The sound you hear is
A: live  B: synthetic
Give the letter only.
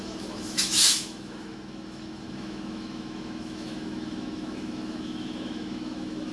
B